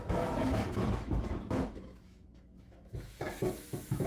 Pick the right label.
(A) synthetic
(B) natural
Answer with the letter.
A